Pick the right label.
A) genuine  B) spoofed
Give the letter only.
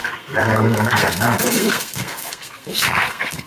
B